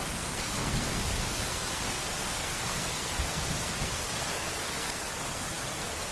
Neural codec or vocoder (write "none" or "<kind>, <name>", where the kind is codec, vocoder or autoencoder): codec, SNAC